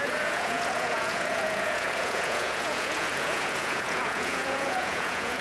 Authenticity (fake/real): fake